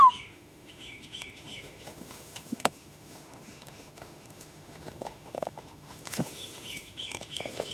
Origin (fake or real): fake